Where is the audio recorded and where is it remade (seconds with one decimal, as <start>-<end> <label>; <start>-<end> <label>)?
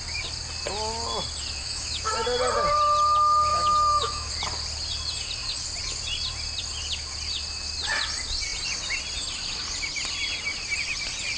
0.0-1.6 recorded; 1.6-2.1 remade; 2.1-3.5 recorded; 3.5-4.3 remade; 4.3-11.4 recorded